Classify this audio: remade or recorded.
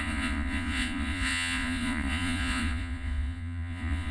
remade